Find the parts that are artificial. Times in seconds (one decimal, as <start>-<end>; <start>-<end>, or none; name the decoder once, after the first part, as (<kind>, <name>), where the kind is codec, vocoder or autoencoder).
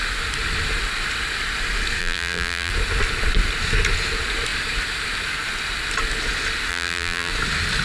2.0-2.7 (vocoder, BigVGAN v2); 6.7-7.3